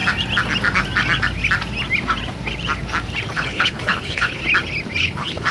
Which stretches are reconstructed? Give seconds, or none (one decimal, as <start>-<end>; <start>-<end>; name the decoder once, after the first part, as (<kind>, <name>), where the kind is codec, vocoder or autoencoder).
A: 3.3-4.4 (codec, HILCodec); 5.0-5.5